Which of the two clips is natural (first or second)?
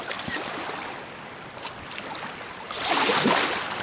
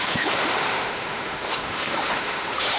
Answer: first